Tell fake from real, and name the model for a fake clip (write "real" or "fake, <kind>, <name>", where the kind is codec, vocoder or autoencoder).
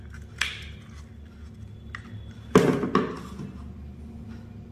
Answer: real